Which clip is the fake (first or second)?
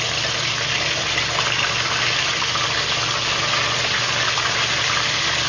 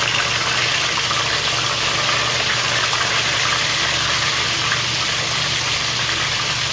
second